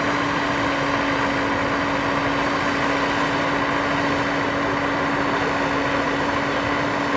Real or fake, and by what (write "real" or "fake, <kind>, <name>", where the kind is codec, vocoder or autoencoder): real